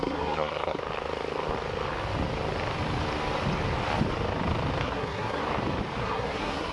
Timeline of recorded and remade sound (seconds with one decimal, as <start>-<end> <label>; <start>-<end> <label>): 0.0-0.8 remade; 0.8-4.8 recorded; 4.8-5.4 remade; 5.4-6.0 recorded; 6.0-6.7 remade

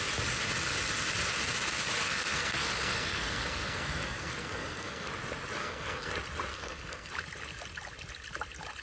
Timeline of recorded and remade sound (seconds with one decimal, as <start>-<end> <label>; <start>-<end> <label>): 0.0-2.0 recorded; 2.0-5.1 remade; 5.1-5.6 recorded; 5.6-6.1 remade; 6.1-6.5 recorded; 6.5-7.1 remade; 7.1-8.8 recorded

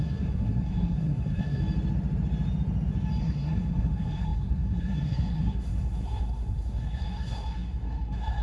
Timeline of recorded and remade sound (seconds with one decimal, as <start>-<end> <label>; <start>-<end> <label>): 0.0-1.6 remade; 1.6-3.2 recorded; 3.2-8.4 remade

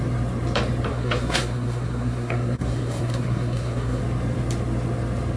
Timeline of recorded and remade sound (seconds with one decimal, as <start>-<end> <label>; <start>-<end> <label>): 0.0-0.9 recorded; 0.9-4.0 remade; 4.0-5.4 recorded

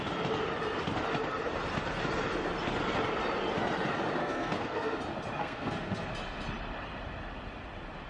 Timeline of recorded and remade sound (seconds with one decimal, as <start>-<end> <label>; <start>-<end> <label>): 0.0-4.2 recorded; 4.2-5.0 remade; 5.0-5.4 recorded; 5.4-6.1 remade; 6.1-8.1 recorded

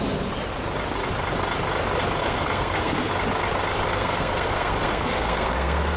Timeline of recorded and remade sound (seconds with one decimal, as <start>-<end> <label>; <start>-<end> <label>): 0.0-2.2 recorded; 2.2-3.1 remade; 3.1-3.9 recorded; 3.9-6.0 remade